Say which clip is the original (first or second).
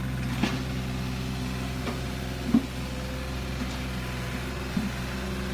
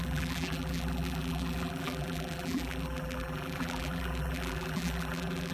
first